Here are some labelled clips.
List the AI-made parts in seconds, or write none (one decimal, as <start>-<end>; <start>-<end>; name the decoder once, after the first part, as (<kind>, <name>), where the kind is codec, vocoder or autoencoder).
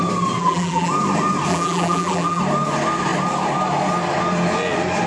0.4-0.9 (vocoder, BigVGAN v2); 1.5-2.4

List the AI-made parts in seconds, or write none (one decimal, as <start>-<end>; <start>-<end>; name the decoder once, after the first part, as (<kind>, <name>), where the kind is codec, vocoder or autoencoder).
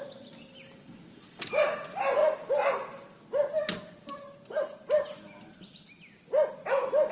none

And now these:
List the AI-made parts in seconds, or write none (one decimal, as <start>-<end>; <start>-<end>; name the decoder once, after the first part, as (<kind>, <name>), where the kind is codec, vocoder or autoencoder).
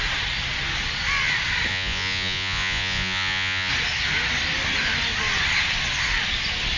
1.7-3.7 (vocoder, Vocos)